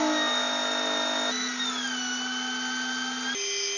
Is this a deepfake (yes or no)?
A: no